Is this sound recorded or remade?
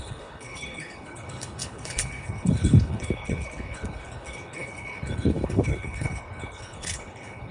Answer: remade